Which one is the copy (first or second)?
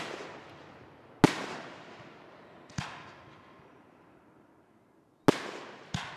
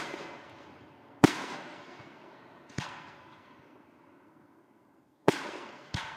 second